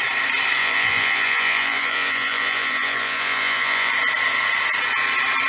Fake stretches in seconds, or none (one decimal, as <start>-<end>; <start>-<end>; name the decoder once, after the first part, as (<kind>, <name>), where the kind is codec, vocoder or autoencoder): 0.6-3.9 (vocoder, Vocos)